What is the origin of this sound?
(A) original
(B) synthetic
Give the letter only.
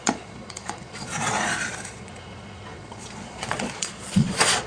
B